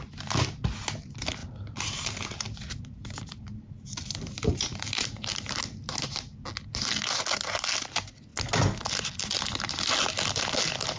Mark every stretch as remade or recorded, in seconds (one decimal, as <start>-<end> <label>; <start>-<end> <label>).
0.0-1.4 recorded; 1.4-5.6 remade; 5.6-11.0 recorded